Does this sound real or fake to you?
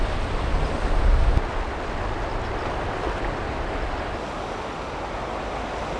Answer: real